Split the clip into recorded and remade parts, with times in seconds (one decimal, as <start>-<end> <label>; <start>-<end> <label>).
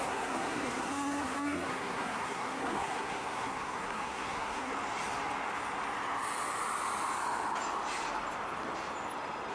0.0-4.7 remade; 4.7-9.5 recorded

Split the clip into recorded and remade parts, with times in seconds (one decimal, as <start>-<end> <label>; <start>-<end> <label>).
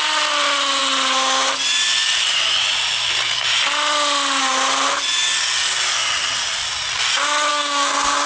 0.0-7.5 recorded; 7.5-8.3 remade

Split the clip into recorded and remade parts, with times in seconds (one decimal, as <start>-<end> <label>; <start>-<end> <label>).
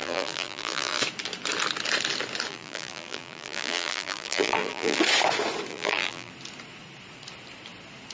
0.0-1.0 remade; 1.0-2.5 recorded; 2.5-5.0 remade; 5.0-5.7 recorded; 5.7-6.3 remade; 6.3-8.1 recorded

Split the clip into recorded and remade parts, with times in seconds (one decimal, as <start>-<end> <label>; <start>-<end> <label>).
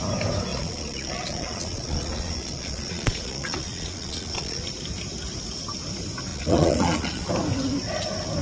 0.0-0.5 recorded; 0.5-4.7 remade; 4.7-6.3 recorded; 6.3-7.3 remade; 7.3-8.4 recorded